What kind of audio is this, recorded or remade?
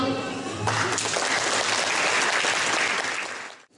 recorded